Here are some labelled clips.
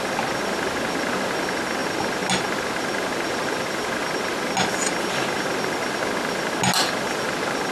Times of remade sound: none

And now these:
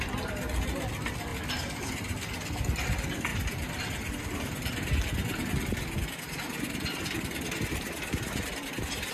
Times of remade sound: none

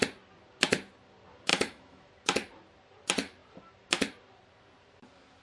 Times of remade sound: 1.5-2.1 (autoencoder, DAC-VAE)

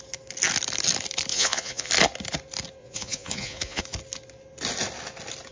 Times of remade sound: 1.3-1.9 (vocoder, Vocos); 2.8-3.8

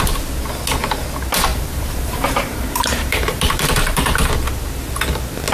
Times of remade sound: 1.5-4.3 (vocoder, BigVGAN v2)

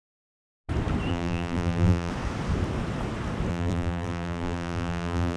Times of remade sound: 1.1-2.1 (vocoder, BigVGAN v2); 3.5-5.4

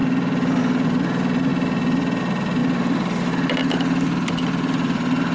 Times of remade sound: none